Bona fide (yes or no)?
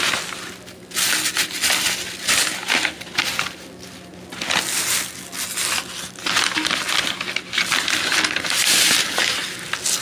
yes